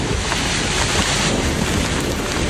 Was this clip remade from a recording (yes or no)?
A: no